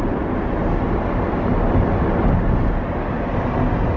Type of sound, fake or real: real